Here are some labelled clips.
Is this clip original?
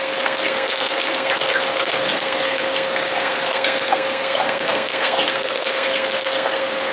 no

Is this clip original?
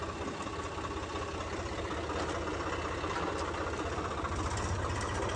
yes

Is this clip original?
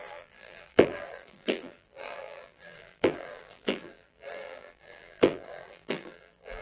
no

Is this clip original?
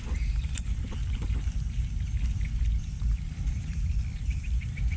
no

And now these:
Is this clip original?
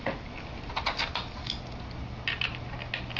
yes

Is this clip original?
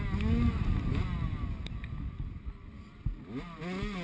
yes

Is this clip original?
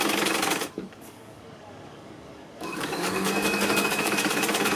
no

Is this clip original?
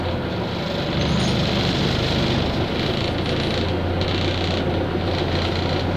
yes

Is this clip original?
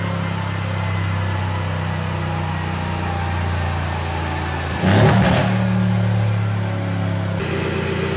yes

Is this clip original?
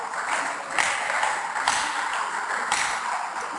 yes